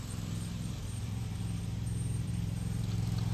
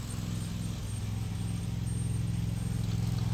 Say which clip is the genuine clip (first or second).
second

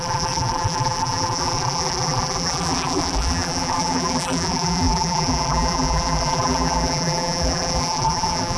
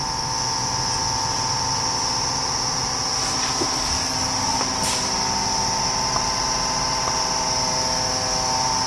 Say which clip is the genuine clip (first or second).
second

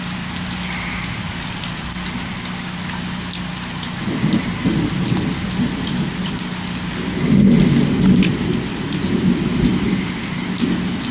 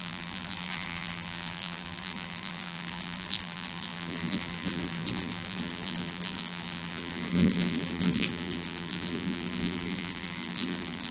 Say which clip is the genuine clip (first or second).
first